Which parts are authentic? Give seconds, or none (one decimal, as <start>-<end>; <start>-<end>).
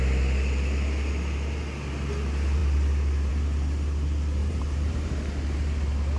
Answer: 0.0-4.4; 5.1-6.2